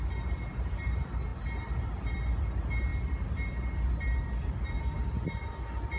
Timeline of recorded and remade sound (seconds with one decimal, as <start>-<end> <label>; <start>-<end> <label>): 0.0-6.0 recorded